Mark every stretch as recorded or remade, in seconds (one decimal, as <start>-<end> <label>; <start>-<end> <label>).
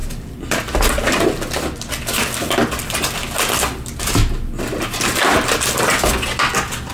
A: 0.0-6.9 recorded